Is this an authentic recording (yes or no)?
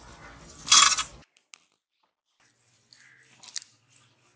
yes